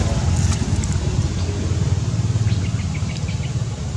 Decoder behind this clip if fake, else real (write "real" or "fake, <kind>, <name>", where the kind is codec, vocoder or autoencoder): real